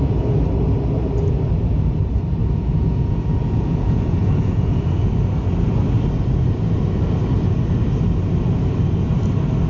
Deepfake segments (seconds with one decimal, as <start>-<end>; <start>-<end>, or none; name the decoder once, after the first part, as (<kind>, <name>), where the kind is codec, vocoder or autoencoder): 2.4-5.1 (vocoder, Vocos)